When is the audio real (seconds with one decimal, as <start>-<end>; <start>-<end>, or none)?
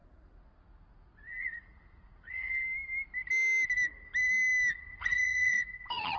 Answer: 0.0-1.4; 2.5-4.9